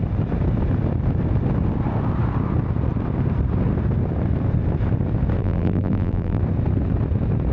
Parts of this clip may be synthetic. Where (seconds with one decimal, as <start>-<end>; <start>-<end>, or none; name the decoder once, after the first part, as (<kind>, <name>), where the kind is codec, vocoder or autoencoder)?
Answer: 5.4-6.4 (vocoder, BigVGAN v2)